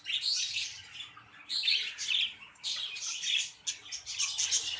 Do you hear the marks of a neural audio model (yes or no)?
no